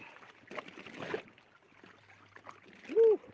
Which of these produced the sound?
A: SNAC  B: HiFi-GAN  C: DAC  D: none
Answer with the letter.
D